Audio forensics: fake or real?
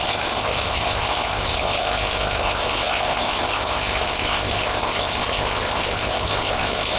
fake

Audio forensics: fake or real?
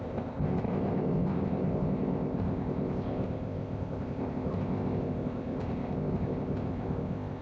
fake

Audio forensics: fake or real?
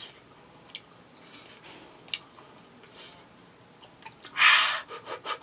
real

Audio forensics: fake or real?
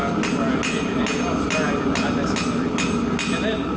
real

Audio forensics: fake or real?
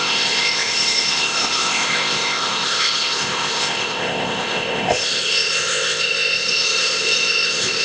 fake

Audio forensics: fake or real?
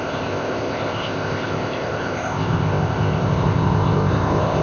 fake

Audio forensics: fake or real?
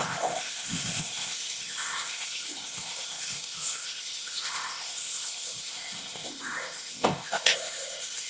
fake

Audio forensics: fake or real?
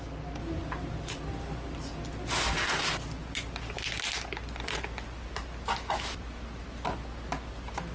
real